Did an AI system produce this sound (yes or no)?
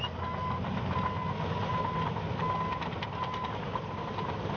no